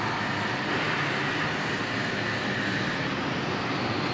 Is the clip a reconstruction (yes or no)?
no